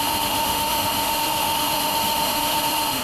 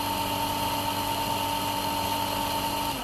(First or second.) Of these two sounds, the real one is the second